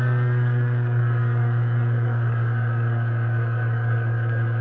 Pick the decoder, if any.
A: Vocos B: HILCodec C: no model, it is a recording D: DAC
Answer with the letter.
D